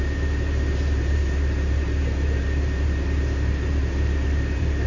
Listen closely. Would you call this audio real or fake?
fake